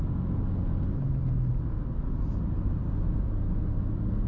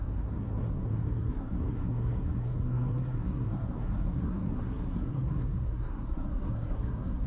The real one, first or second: first